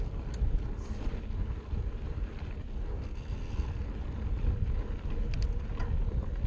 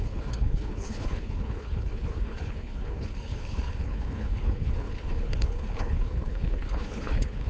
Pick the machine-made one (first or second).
second